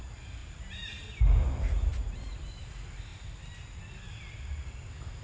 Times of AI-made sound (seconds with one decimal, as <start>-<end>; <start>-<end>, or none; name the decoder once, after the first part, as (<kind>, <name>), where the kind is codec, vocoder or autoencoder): 0.4-1.0 (vocoder, BigVGAN v2); 1.9-2.7